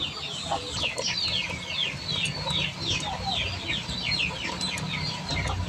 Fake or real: real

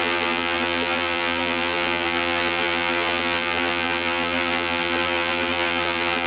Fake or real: fake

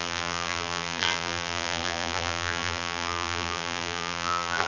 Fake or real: fake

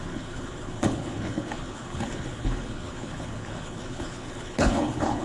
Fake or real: fake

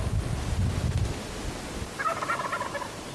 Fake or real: real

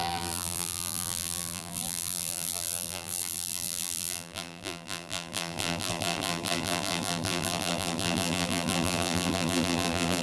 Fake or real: fake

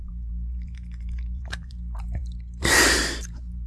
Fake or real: fake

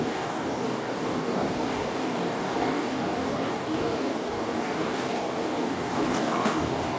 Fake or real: fake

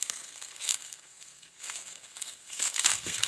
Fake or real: fake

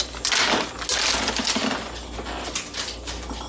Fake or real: real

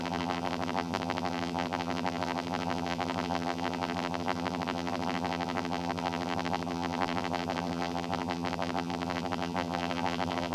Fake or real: fake